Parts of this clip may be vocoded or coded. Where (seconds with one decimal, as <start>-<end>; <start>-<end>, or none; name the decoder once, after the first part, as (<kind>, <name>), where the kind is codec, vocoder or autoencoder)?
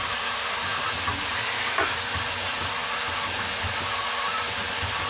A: none